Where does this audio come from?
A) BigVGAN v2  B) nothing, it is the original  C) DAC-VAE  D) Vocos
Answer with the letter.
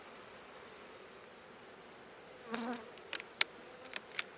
B